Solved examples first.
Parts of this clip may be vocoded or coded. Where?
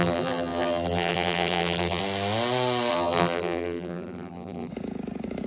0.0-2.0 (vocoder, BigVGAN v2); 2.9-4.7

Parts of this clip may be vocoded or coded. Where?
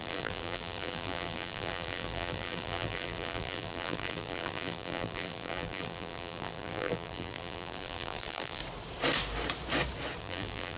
0.0-8.6 (vocoder, BigVGAN v2); 10.2-10.8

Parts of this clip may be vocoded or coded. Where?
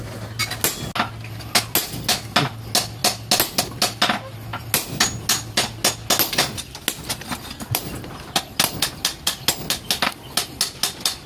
none